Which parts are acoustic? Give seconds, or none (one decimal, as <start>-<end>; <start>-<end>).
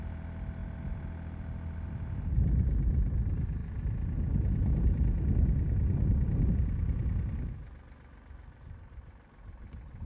0.0-10.0